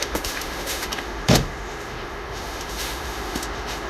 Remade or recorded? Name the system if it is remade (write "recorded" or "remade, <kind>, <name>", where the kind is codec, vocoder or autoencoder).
remade, autoencoder, DAC-VAE